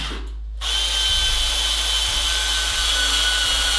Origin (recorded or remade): recorded